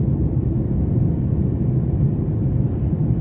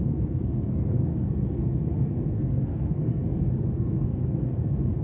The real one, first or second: first